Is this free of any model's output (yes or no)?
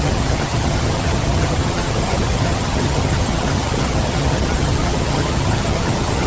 no